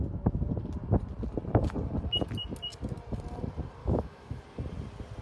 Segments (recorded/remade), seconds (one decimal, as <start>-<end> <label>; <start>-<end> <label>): 0.0-3.8 recorded; 3.8-4.4 remade; 4.4-5.2 recorded